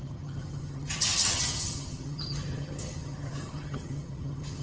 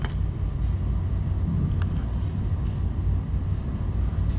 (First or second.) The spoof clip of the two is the first